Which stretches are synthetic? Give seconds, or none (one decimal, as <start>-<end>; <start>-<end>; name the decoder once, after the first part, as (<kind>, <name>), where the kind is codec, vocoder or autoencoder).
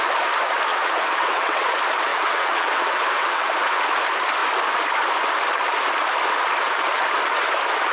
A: 0.7-1.7 (vocoder, WaveNeXt); 2.1-3.8